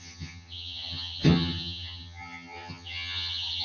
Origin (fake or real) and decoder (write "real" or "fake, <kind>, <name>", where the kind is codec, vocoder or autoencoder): fake, vocoder, HiFi-GAN